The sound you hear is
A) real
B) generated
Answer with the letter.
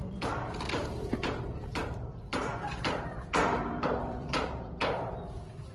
B